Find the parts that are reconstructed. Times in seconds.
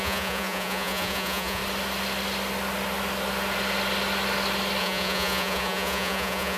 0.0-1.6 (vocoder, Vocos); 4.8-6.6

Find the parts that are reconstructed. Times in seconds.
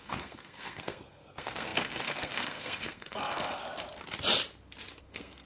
0.0-3.6 (codec, SNAC); 5.0-5.5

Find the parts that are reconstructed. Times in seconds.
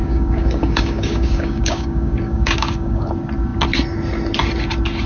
0.0-3.1 (codec, DAC)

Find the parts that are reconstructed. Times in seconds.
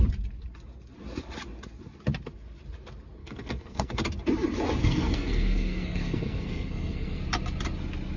3.2-4.0 (codec, SNAC); 4.8-7.2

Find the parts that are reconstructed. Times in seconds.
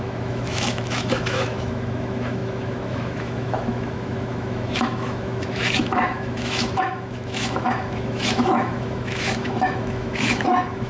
0.0-10.9 (autoencoder, DAC-VAE)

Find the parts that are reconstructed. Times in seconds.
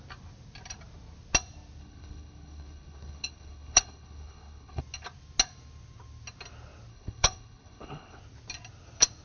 1.8-4.8 (codec, HILCodec); 6.9-8.2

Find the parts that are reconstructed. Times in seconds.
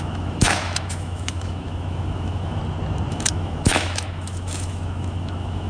0.0-2.6 (autoencoder, DAC-VAE); 3.1-5.7